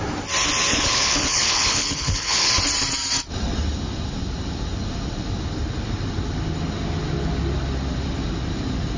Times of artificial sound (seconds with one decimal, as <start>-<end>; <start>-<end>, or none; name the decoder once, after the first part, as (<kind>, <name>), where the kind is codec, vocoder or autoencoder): 0.7-2.5 (codec, HILCodec)